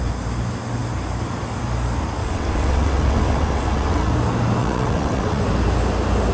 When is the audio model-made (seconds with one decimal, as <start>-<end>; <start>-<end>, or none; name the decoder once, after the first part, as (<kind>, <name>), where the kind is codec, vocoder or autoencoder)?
2.2-4.1 (vocoder, WaveNeXt); 4.6-5.4